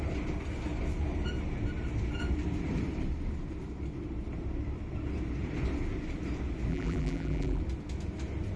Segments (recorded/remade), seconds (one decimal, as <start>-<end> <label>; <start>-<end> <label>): 0.0-6.7 recorded; 6.7-7.6 remade; 7.6-8.6 recorded

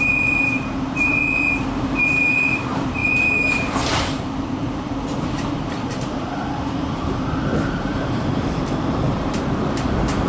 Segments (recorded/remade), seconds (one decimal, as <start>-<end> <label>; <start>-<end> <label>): 0.0-1.1 remade; 1.1-1.6 recorded; 1.6-10.3 remade